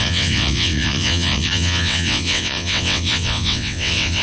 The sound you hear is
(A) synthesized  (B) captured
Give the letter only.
A